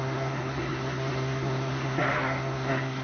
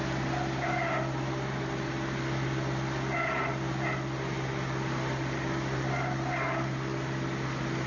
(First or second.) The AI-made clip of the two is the first